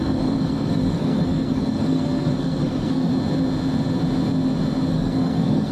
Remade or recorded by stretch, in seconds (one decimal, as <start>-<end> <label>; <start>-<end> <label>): 0.0-3.1 remade; 3.1-4.9 recorded; 4.9-5.7 remade

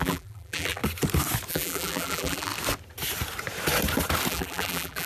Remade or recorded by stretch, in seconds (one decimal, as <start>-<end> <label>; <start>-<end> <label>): 0.0-0.8 remade; 0.8-1.5 recorded; 1.5-2.5 remade; 2.5-4.3 recorded; 4.3-5.1 remade